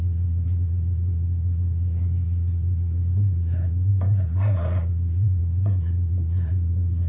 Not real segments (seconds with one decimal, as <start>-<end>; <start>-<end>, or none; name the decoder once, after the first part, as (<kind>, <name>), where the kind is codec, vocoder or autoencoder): 0.0-7.1 (vocoder, Vocos)